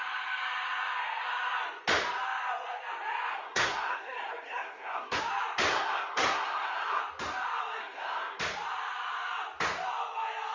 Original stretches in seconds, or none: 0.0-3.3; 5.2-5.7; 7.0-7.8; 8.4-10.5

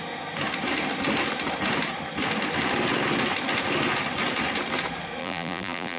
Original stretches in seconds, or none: 0.0-5.2

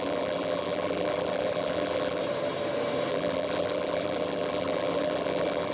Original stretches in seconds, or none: 2.2-3.1

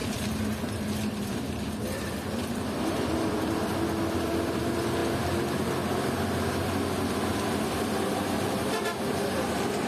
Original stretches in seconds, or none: 3.0-9.9

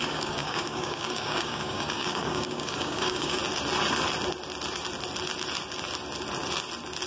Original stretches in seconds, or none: 3.4-7.1